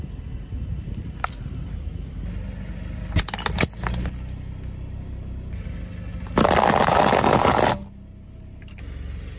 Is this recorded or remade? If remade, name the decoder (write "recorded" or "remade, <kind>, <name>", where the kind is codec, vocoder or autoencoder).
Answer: recorded